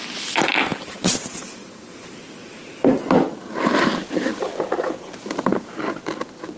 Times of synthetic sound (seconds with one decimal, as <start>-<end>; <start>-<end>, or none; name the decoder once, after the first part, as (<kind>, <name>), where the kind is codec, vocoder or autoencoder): 0.7-3.0 (vocoder, BigVGAN v2)